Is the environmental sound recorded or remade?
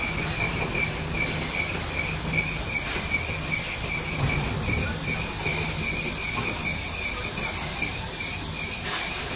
recorded